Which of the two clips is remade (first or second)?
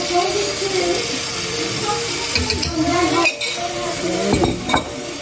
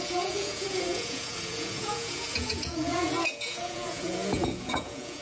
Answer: second